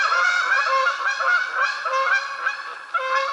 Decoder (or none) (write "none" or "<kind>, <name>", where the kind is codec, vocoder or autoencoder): none